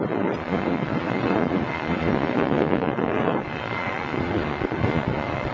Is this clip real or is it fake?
fake